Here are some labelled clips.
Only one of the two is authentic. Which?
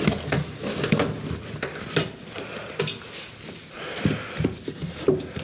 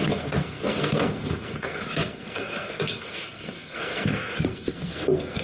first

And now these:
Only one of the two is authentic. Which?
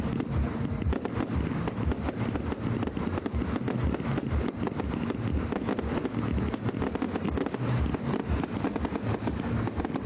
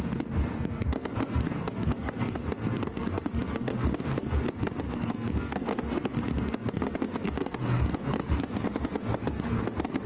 first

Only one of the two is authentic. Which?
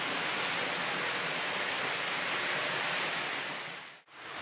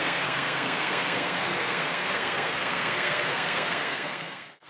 first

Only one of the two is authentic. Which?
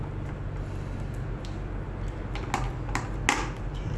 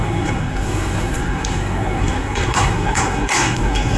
first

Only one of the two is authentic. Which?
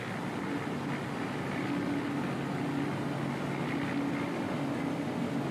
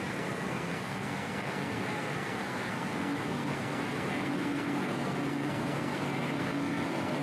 first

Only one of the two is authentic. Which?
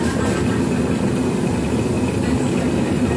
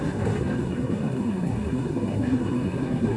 first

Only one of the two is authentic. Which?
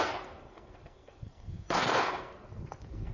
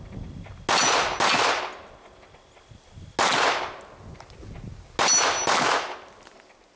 second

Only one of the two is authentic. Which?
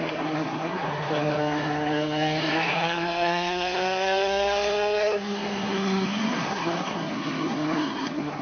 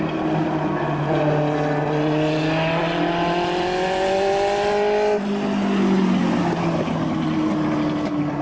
second